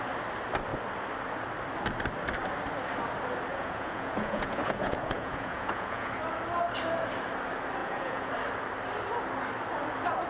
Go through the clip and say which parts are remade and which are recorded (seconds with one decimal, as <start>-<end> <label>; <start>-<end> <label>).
0.0-3.5 recorded; 3.5-6.1 remade; 6.1-7.8 recorded; 7.8-8.3 remade; 8.3-10.3 recorded